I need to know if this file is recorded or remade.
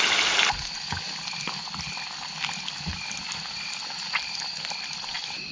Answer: recorded